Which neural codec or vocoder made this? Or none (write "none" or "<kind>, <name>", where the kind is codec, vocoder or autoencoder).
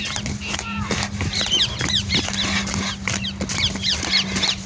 none